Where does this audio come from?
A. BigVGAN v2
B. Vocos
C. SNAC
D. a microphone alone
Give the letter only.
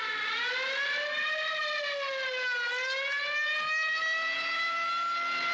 D